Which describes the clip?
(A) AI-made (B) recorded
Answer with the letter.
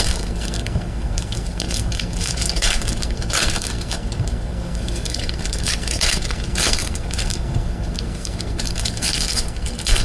A